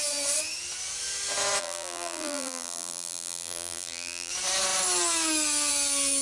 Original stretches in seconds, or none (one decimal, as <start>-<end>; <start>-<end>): 0.0-1.6; 4.3-6.2